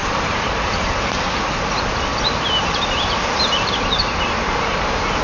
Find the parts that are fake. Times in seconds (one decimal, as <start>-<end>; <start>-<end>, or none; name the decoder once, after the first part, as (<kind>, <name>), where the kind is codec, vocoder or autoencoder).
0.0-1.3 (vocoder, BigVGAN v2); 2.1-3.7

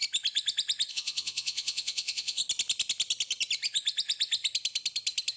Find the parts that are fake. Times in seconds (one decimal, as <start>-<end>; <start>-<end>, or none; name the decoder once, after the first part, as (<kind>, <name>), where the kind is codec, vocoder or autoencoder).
0.9-2.4 (vocoder, Vocos)

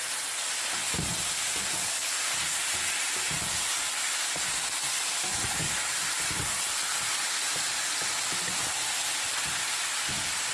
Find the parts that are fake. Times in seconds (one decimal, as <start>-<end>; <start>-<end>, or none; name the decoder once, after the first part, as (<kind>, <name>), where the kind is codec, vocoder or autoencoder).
5.6-10.0 (vocoder, BigVGAN v2)